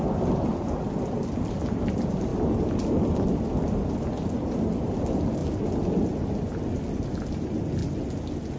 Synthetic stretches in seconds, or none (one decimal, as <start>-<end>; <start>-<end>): none